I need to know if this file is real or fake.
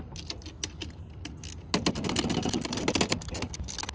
real